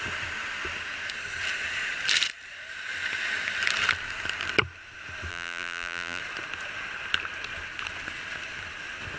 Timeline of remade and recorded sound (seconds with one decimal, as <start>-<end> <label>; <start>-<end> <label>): 0.0-5.3 recorded; 5.3-6.2 remade; 6.2-9.2 recorded